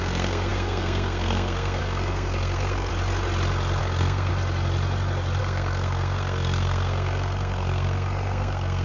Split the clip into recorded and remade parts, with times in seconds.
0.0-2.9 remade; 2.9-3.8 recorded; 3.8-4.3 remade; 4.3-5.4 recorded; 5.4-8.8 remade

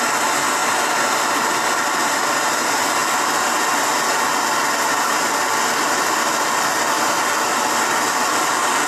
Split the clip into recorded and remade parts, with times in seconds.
0.0-8.9 recorded